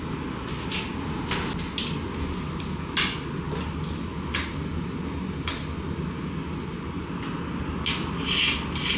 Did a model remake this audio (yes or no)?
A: no